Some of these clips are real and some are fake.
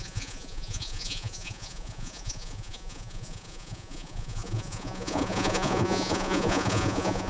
fake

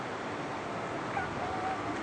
real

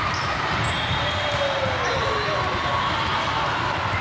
fake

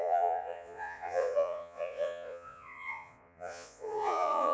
fake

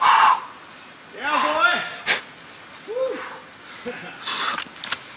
real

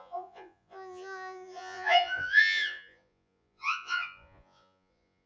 fake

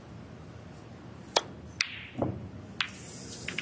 real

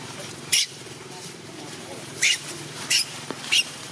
fake